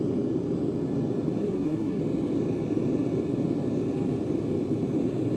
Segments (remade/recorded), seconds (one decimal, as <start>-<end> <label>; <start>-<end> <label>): 0.0-1.4 recorded; 1.4-2.0 remade; 2.0-5.4 recorded